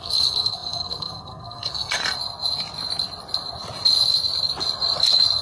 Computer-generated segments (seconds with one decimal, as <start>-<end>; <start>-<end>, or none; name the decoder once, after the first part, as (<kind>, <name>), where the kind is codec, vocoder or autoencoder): 0.0-2.0 (codec, SNAC)